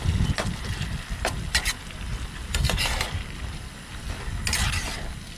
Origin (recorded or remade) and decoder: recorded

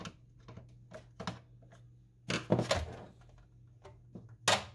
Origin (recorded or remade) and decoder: recorded